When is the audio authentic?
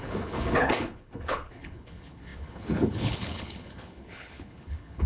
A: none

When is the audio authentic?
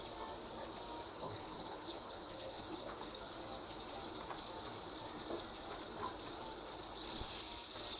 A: 0.0-1.1; 3.3-8.0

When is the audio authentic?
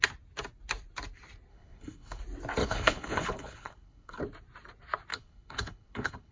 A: 0.0-1.5; 2.2-2.6; 4.2-5.1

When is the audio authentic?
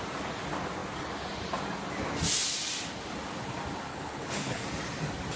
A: 0.0-3.9; 4.6-5.4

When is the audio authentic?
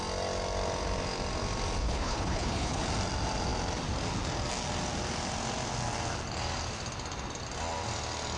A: 0.0-1.8; 2.8-8.4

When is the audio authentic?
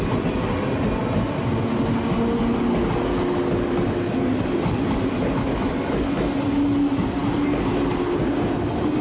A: 0.0-9.0